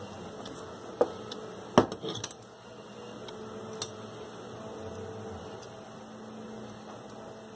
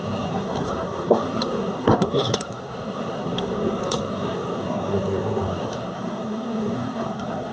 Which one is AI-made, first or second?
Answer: second